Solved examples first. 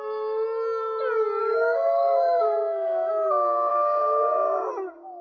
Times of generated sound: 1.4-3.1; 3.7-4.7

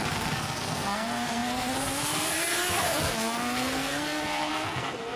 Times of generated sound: 0.0-5.2

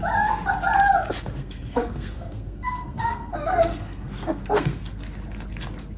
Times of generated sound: 1.4-5.0

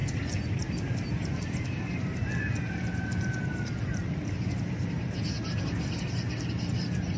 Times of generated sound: none